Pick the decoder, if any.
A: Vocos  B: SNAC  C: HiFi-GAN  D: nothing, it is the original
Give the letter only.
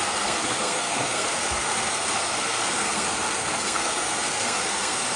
B